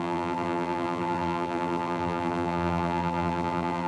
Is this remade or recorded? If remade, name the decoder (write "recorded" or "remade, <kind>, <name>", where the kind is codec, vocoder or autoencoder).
remade, vocoder, BigVGAN v2